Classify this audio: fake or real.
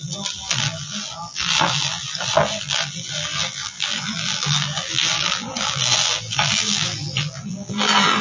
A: fake